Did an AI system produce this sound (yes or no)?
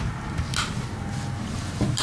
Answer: no